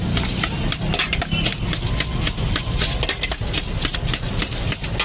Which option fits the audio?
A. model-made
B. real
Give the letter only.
B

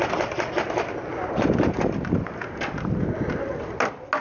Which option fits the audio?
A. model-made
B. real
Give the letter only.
B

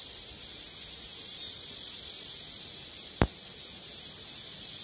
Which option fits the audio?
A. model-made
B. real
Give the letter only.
B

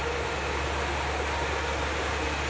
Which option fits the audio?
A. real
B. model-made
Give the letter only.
A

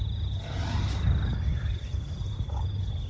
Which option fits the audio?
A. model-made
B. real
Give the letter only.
B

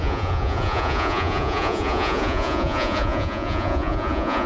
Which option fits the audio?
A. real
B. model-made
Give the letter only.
B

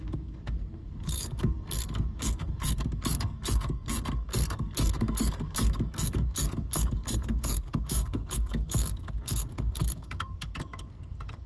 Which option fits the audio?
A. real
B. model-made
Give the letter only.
B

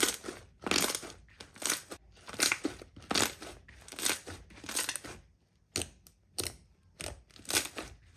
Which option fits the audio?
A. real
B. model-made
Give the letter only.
A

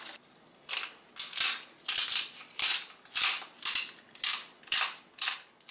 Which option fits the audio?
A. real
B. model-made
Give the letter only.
A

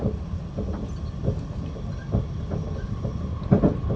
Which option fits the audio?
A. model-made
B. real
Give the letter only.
B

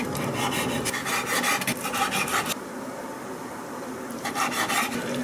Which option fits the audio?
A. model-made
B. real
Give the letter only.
B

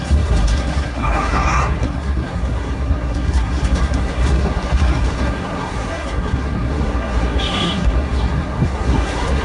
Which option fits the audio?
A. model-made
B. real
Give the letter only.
A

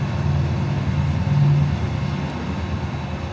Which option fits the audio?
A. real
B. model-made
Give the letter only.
A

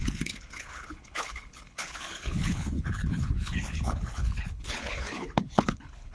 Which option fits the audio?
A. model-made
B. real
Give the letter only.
A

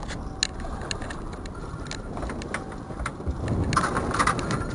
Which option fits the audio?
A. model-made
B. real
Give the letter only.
B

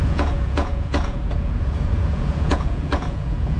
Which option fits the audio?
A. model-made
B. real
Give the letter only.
A